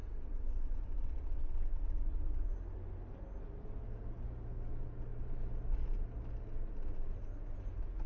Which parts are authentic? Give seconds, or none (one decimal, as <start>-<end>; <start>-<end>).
2.5-8.1